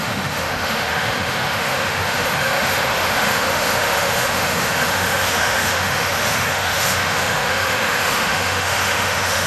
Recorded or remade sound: remade